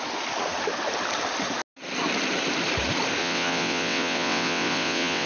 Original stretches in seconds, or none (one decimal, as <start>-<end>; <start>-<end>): 0.0-3.2